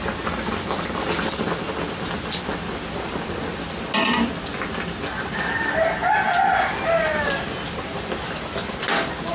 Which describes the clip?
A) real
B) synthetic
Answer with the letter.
A